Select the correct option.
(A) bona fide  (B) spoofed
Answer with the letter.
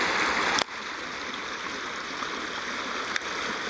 A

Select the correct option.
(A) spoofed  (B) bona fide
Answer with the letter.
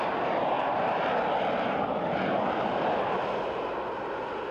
B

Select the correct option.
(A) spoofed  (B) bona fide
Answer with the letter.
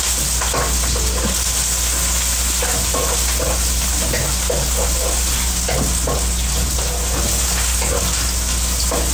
B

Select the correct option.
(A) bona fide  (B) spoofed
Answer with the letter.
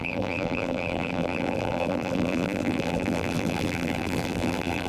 B